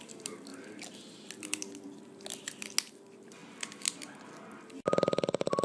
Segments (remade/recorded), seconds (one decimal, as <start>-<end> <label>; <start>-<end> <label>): 0.0-0.5 remade; 0.5-2.9 recorded; 2.9-3.4 remade; 3.4-5.6 recorded